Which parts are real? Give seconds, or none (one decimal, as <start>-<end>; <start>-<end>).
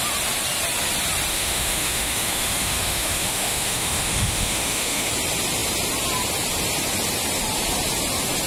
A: 0.0-1.3; 5.1-8.5